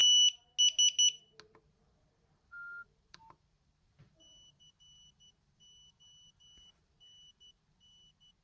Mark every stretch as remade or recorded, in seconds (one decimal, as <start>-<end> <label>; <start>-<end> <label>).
0.0-1.6 recorded; 1.6-8.4 remade